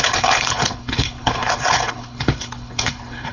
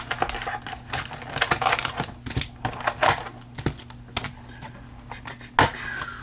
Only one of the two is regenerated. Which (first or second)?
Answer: first